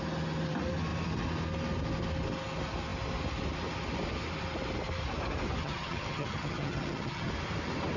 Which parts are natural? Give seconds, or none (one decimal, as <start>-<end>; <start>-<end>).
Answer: 0.0-5.6; 7.3-8.0